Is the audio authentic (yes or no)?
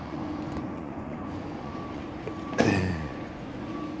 no